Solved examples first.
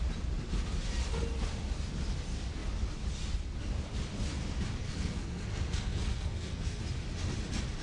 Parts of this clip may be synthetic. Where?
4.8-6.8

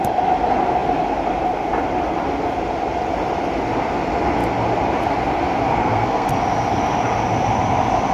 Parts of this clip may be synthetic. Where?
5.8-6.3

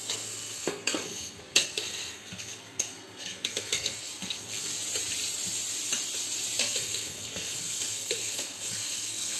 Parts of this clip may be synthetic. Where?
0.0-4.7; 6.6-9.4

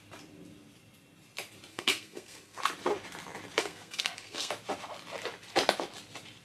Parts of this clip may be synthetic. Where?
1.7-2.6; 3.6-4.5

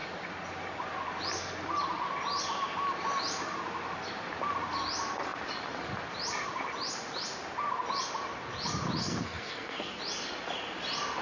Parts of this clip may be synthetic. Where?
9.0-10.0